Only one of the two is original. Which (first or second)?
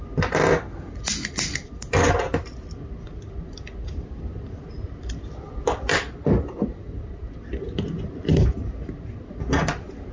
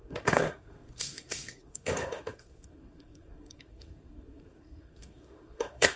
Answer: first